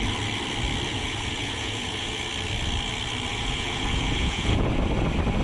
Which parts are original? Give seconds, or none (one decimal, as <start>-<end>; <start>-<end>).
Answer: 0.0-0.9; 2.2-3.3; 4.7-5.4